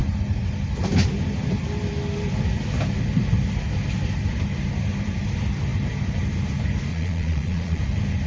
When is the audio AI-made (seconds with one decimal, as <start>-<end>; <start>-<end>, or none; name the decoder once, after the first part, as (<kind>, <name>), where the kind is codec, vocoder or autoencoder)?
6.9-7.8 (vocoder, Vocos)